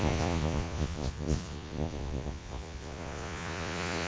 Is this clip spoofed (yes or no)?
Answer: yes